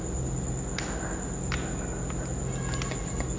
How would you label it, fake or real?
real